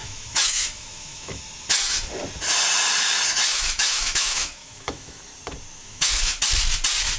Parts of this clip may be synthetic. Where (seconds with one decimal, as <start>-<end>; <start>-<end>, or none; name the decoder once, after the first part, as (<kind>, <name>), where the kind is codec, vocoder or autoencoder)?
0.0-1.4 (autoencoder, DAC-VAE); 3.5-5.2; 5.8-6.4